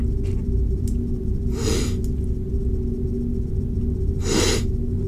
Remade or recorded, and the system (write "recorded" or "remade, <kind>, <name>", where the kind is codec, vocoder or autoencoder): recorded